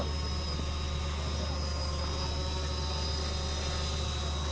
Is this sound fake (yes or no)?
no